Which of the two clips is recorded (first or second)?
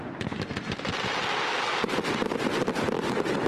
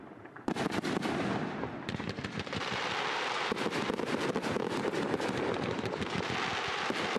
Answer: first